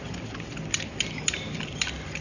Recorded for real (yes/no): yes